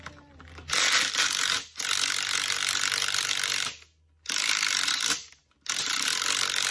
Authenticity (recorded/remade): recorded